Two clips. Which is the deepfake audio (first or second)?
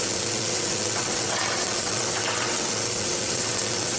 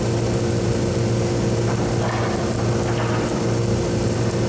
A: first